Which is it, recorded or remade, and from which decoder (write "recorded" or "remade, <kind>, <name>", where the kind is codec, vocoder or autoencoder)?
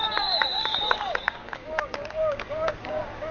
remade, codec, DAC